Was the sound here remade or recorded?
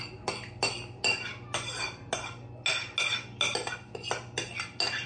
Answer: recorded